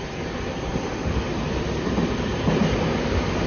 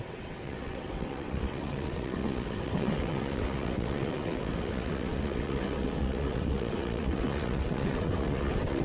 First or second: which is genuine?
first